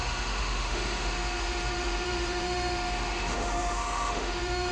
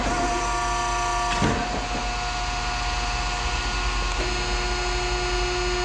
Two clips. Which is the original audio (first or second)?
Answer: second